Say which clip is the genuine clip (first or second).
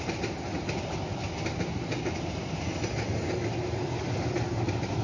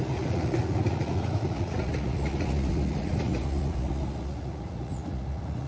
first